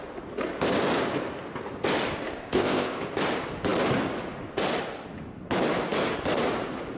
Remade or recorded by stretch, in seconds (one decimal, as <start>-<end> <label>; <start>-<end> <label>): 0.0-2.4 recorded; 2.4-3.0 remade; 3.0-7.0 recorded